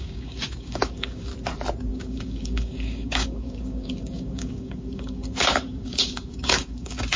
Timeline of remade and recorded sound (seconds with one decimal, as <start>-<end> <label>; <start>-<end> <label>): 0.0-1.3 remade; 1.3-1.9 recorded; 1.9-7.2 remade